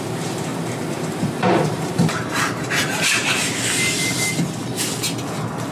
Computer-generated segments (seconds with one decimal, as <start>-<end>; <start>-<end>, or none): 0.0-3.4